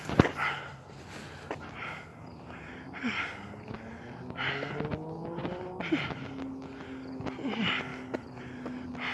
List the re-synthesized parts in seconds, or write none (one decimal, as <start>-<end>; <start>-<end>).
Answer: 2.1-2.9; 5.4-6.0; 7.9-8.4